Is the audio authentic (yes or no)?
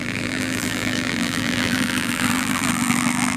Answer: no